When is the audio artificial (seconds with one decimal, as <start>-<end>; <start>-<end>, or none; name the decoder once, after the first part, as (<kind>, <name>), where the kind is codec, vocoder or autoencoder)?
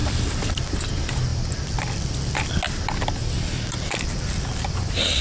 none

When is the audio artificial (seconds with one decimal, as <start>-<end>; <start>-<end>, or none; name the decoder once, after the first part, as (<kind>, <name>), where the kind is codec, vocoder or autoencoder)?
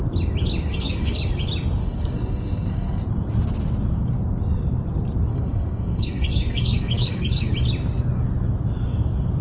0.7-1.2 (codec, SNAC); 1.8-3.0; 5.3-7.5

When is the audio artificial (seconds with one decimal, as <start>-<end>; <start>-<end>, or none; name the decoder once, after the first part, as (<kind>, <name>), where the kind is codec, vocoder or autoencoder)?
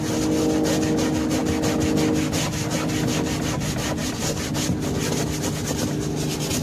none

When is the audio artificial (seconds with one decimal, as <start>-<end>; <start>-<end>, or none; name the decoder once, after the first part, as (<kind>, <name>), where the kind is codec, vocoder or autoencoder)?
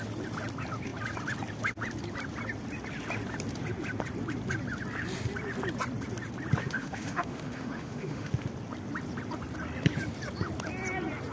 6.6-8.3 (autoencoder, DAC-VAE)